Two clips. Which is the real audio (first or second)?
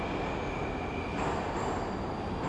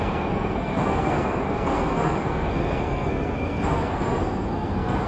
first